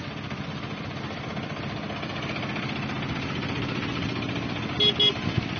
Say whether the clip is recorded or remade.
recorded